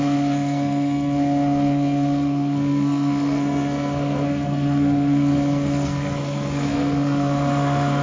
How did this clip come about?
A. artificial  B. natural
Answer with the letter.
A